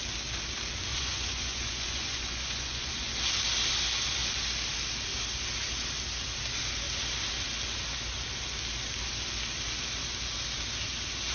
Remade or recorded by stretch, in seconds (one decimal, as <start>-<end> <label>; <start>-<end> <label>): 0.0-0.9 recorded; 0.9-3.1 remade; 3.1-11.3 recorded